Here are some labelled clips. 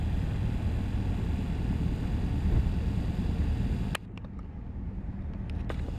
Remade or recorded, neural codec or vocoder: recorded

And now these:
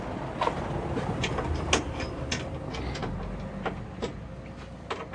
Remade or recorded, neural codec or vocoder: recorded